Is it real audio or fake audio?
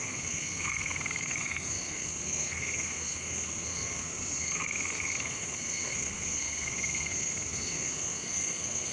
fake